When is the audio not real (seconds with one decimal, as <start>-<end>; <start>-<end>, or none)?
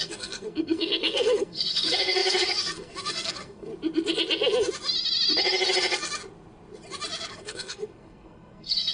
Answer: 0.0-3.7; 7.3-8.9